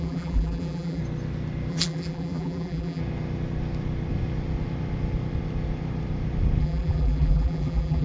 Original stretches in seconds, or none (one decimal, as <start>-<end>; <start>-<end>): 1.0-1.7; 3.0-6.6